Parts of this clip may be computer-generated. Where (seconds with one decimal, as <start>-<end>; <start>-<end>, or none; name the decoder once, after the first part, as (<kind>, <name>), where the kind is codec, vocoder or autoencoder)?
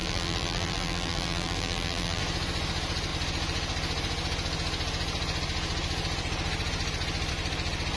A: 0.0-2.2 (vocoder, BigVGAN v2)